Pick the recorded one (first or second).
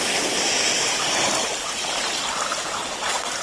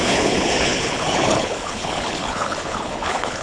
first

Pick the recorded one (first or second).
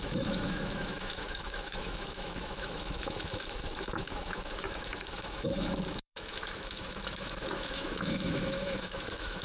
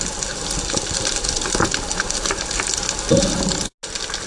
second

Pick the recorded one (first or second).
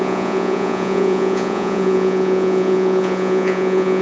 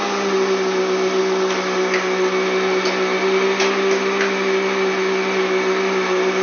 second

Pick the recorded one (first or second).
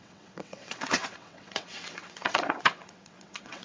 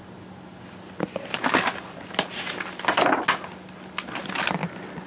second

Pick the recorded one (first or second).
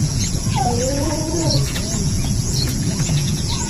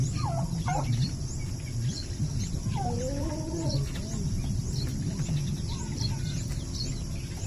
second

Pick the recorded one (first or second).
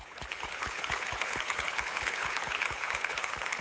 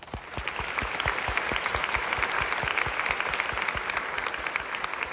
second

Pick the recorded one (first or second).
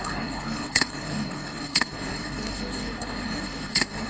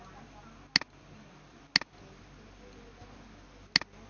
second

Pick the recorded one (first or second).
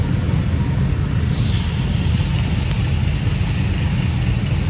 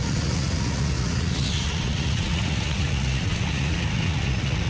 first